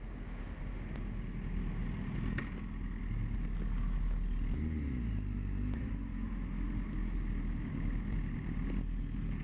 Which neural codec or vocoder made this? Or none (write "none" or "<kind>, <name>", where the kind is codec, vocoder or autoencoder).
none